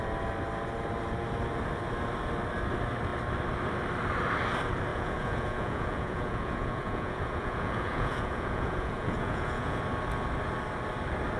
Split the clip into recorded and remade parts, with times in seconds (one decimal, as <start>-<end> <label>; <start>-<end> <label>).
0.0-4.9 recorded; 4.9-9.8 remade; 9.8-11.4 recorded